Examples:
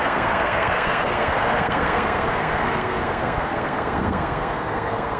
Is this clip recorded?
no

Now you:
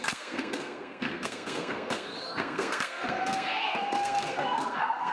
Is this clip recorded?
no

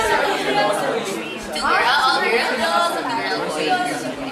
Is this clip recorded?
yes